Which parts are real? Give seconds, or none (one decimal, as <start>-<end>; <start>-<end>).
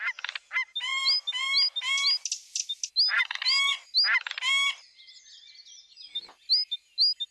0.0-7.3